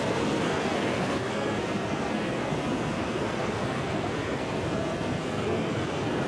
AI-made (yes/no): yes